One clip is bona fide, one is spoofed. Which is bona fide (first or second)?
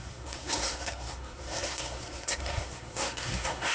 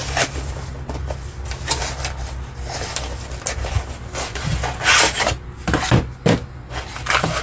second